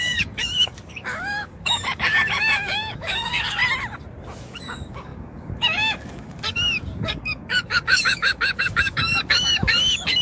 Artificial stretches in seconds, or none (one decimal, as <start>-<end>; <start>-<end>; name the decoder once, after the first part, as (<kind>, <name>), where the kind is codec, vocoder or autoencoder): 0.0-3.6 (codec, DAC); 4.4-10.2